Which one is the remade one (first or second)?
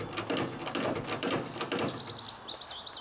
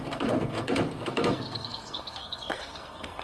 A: second